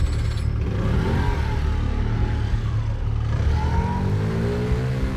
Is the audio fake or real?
real